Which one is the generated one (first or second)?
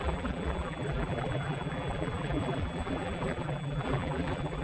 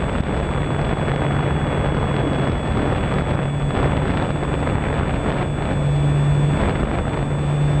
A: first